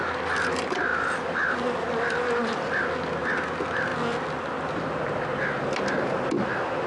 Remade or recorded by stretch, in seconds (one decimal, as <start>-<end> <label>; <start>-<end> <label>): 0.0-6.9 recorded